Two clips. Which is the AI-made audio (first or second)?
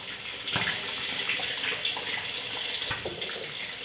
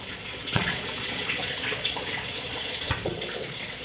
second